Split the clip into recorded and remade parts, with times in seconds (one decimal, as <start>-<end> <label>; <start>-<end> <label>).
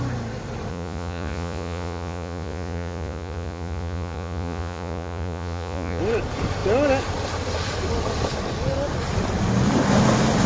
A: 0.0-0.7 recorded; 0.7-6.0 remade; 6.0-10.5 recorded